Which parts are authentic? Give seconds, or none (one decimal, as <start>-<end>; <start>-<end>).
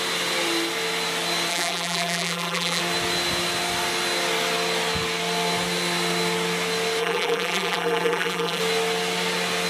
0.0-1.5; 2.8-7.0; 8.6-9.7